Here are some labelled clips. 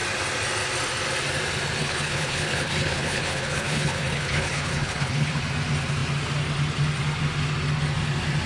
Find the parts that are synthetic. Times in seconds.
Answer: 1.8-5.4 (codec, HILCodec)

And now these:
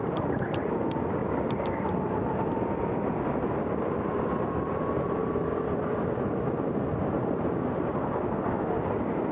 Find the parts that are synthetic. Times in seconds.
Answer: none

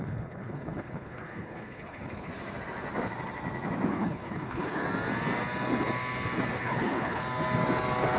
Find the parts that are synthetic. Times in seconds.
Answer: 0.0-2.3 (codec, HILCodec); 3.9-4.8; 6.6-7.2

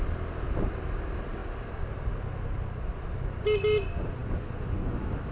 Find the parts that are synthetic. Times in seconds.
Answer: none

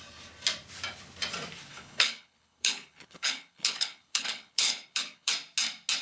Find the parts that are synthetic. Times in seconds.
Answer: 1.7-5.3 (codec, HILCodec)

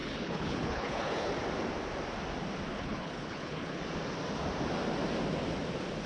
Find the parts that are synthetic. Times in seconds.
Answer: 0.0-1.3 (codec, HILCodec); 2.7-3.8

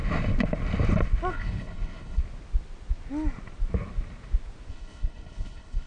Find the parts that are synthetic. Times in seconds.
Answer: 1.3-2.2 (codec, HILCodec); 4.7-5.9